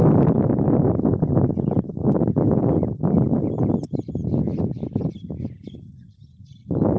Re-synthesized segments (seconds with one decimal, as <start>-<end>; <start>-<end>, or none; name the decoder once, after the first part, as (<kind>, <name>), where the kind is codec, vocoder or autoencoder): none